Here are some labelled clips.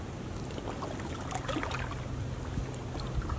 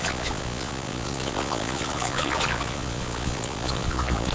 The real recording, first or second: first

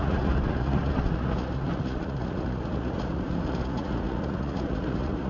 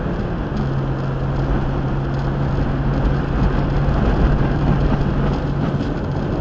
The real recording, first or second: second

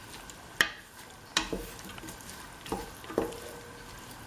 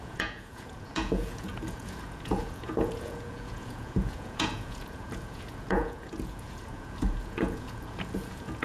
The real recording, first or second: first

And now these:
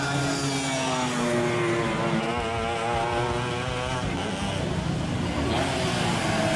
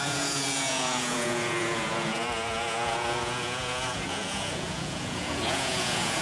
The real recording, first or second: first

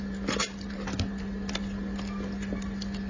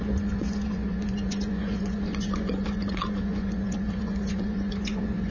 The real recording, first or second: first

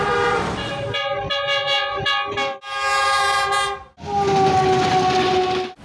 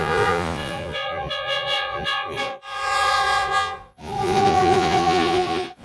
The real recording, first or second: first